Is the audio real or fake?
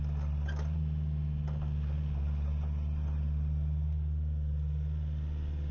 real